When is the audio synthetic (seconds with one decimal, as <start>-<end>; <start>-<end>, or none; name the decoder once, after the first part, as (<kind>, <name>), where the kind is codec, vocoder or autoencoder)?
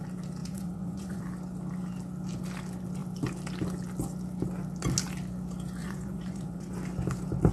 0.4-1.2 (vocoder, Vocos); 5.8-6.8